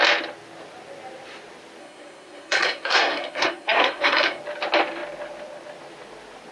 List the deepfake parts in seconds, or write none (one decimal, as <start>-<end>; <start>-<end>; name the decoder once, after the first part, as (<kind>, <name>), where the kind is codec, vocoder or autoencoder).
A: 1.8-4.4 (codec, SNAC)